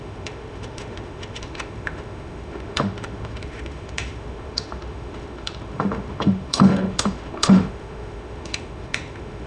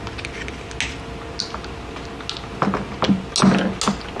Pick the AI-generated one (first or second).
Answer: first